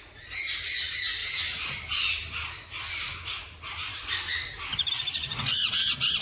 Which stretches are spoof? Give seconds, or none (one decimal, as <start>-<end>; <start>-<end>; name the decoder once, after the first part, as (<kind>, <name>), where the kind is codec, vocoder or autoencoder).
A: 1.2-4.9 (vocoder, BigVGAN v2); 5.6-6.2